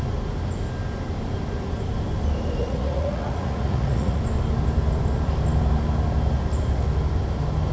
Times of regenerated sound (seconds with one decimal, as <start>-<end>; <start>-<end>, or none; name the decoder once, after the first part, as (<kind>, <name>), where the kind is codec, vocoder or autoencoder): 2.6-4.2 (vocoder, Vocos)